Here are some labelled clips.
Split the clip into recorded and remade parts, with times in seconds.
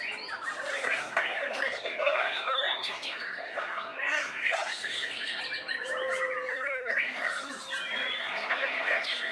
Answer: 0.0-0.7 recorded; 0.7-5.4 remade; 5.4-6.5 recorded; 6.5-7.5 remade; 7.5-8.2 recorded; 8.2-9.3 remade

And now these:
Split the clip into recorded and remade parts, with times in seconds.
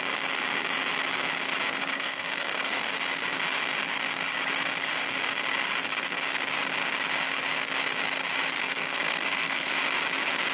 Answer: 0.0-1.9 recorded; 1.9-2.8 remade; 2.8-8.6 recorded; 8.6-9.7 remade; 9.7-10.5 recorded